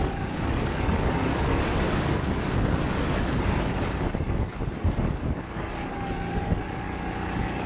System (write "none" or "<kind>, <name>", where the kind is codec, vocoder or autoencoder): codec, DAC